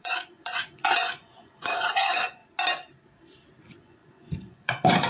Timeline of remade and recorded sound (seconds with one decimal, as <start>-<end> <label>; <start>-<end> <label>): 0.0-2.4 remade; 2.4-3.6 recorded; 3.6-5.1 remade